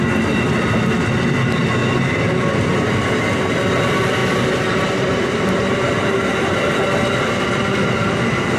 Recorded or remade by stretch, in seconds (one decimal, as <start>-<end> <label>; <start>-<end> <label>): 0.0-8.6 recorded